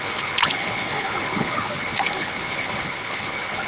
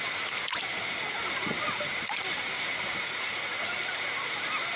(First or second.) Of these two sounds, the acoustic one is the second